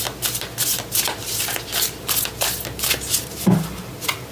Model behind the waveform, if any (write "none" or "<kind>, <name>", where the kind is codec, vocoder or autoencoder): none